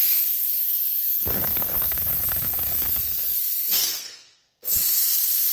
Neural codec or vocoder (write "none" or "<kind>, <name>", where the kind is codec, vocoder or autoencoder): codec, SNAC